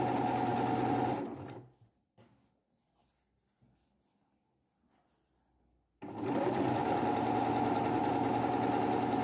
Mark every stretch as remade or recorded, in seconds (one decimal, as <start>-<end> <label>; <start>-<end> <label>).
0.0-6.8 recorded; 6.8-8.4 remade; 8.4-9.2 recorded